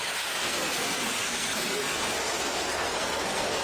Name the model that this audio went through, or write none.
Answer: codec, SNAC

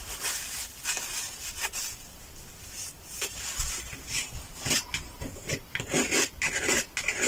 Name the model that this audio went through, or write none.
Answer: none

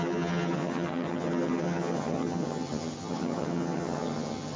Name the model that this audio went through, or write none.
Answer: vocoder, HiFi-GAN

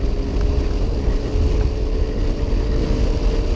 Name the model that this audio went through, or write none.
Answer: none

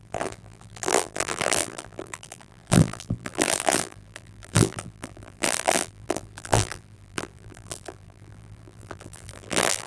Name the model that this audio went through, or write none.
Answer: vocoder, BigVGAN v2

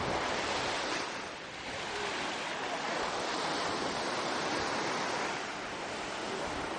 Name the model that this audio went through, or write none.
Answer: none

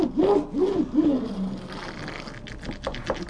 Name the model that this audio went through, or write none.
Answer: none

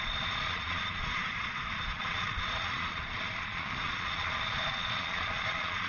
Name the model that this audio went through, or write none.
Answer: vocoder, Vocos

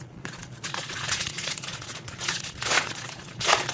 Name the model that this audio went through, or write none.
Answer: vocoder, Vocos